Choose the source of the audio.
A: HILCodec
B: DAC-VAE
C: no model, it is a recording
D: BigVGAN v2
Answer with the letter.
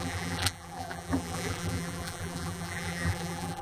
D